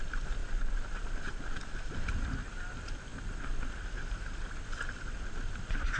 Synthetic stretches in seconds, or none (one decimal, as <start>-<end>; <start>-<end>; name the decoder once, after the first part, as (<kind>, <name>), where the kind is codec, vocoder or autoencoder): none